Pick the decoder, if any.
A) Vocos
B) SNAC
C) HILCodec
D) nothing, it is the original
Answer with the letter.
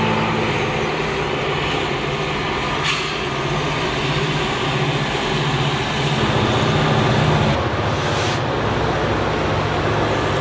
D